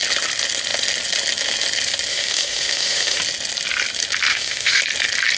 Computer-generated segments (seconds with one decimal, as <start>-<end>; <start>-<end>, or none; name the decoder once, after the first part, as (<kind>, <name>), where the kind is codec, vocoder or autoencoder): 2.1-3.2 (autoencoder, DAC-VAE); 4.3-4.8